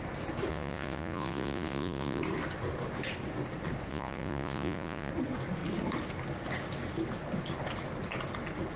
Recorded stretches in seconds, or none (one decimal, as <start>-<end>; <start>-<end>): 0.0-0.5; 2.2-3.9; 5.1-8.8